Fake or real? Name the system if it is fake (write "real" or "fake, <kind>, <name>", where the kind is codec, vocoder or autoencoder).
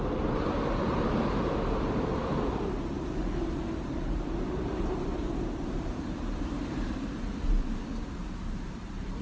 fake, vocoder, BigVGAN v2